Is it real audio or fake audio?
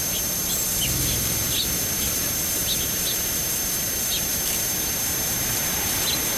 real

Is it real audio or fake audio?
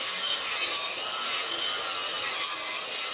real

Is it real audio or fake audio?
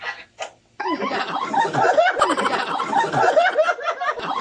real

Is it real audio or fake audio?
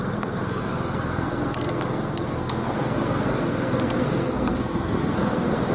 fake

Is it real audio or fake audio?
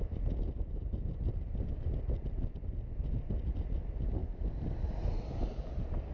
real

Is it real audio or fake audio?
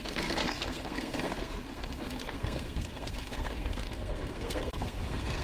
fake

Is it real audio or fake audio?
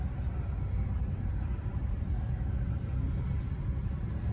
real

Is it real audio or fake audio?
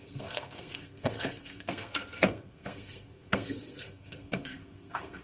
fake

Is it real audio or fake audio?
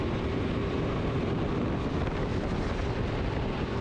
real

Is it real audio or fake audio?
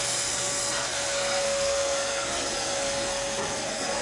fake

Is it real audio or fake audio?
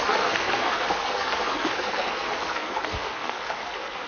fake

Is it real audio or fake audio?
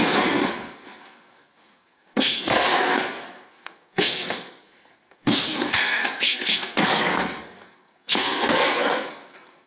fake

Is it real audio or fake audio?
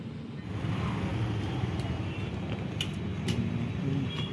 real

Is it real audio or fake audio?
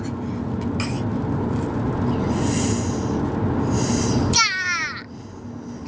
real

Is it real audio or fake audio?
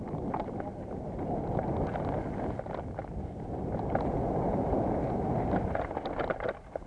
real